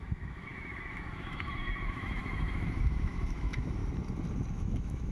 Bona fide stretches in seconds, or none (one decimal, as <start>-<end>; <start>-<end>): 3.8-4.5